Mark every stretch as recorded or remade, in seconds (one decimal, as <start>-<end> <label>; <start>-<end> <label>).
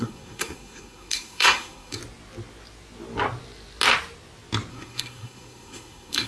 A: 0.0-2.0 remade; 2.0-4.7 recorded; 4.7-6.3 remade